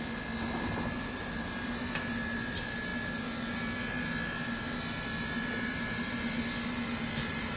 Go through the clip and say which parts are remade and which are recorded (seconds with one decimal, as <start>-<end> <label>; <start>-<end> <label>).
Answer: 0.0-7.6 recorded